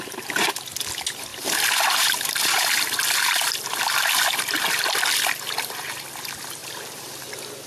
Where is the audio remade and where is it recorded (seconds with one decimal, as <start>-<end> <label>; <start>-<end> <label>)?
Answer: 0.0-1.3 recorded; 1.3-2.7 remade; 2.7-6.6 recorded; 6.6-7.2 remade; 7.2-7.7 recorded